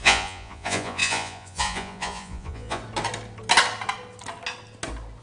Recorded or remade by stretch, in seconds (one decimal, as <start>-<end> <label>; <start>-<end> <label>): 0.0-2.8 remade; 2.8-5.2 recorded